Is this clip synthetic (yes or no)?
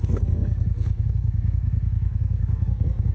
yes